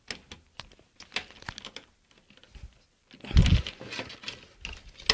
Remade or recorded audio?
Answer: recorded